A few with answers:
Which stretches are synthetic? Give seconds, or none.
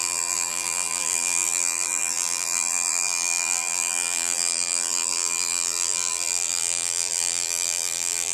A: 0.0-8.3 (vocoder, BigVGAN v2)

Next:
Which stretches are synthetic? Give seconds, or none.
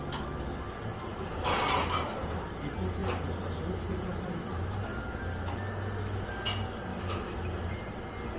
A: 1.1-2.4 (vocoder, BigVGAN v2); 3.0-4.7; 6.9-7.9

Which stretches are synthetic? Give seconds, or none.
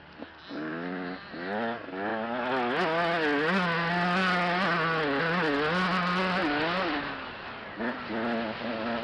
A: none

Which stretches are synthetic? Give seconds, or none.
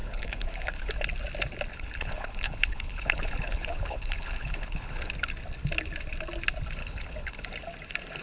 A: 0.0-0.9 (codec, HILCodec); 1.7-5.1; 6.8-7.4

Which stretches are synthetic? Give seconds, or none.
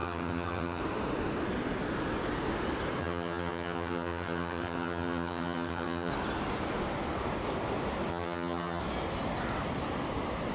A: 0.0-0.8 (vocoder, HiFi-GAN); 3.0-6.1; 8.1-8.8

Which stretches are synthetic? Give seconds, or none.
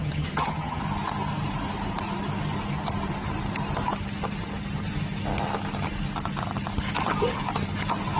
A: 0.0-0.8 (vocoder, HiFi-GAN)